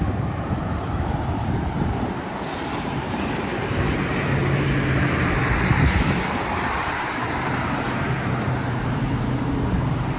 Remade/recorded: remade